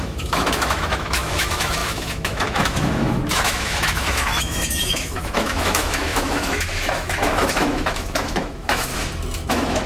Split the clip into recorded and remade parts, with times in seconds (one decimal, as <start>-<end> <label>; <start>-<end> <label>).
0.0-8.9 remade; 8.9-9.5 recorded; 9.5-9.9 remade